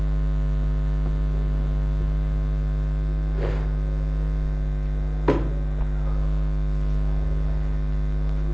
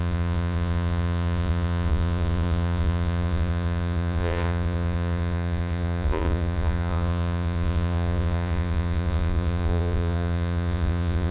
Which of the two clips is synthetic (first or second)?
second